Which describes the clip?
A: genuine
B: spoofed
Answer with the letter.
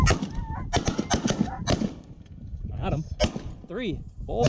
A